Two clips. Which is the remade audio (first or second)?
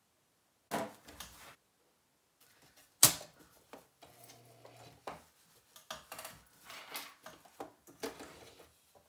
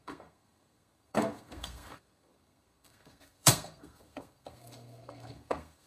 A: second